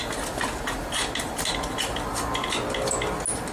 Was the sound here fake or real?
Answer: real